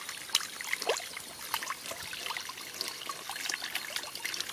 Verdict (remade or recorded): recorded